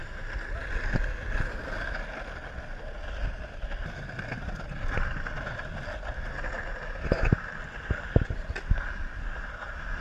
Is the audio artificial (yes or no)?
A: no